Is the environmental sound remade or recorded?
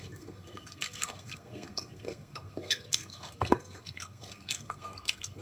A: remade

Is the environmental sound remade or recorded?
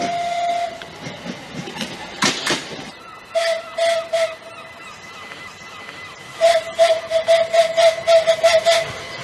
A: recorded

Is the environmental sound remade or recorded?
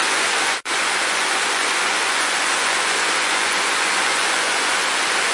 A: remade